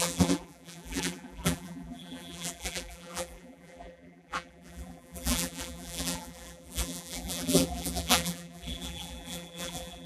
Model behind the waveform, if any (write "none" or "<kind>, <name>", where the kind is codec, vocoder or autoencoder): vocoder, BigVGAN v2